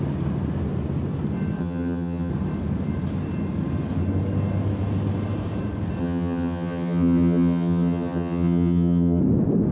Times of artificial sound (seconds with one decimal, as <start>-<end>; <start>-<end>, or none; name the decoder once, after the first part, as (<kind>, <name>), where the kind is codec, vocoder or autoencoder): 1.6-2.3 (vocoder, HiFi-GAN); 6.0-9.2